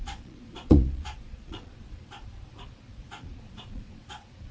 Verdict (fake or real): fake